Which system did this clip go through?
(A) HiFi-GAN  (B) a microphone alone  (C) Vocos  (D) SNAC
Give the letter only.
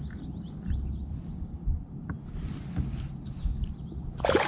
B